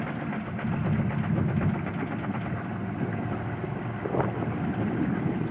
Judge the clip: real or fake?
real